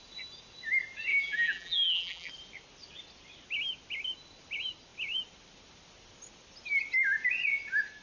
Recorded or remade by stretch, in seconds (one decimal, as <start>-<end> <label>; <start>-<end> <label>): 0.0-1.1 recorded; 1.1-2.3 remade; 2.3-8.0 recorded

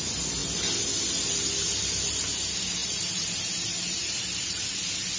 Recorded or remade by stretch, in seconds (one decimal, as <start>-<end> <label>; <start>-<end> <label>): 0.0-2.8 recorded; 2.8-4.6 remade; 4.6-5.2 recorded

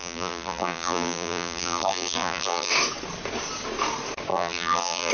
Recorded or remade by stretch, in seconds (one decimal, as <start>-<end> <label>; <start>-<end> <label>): 0.0-2.7 remade; 2.7-4.3 recorded; 4.3-5.1 remade

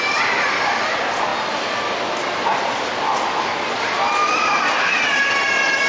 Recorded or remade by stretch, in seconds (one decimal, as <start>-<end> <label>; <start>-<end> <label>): 0.0-4.2 recorded; 4.2-5.3 remade; 5.3-5.9 recorded

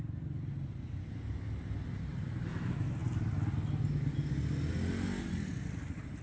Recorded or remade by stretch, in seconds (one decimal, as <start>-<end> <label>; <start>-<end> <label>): 0.0-6.2 recorded